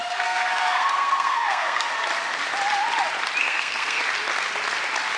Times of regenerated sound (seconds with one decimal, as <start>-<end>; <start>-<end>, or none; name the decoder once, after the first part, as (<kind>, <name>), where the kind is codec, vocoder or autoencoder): 0.0-1.9 (codec, SNAC); 3.4-4.0